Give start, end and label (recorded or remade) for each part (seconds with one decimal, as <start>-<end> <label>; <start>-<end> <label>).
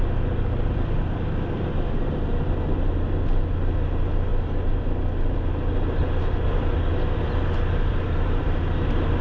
0.0-9.2 recorded